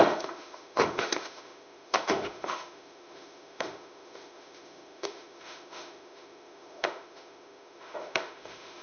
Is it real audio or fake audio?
fake